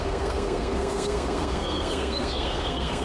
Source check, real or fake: fake